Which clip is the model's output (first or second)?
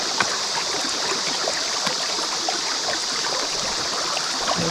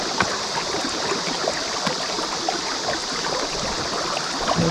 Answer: first